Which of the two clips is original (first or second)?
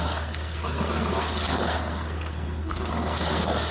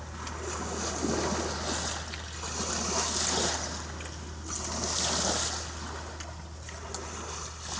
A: second